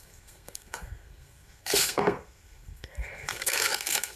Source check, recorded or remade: remade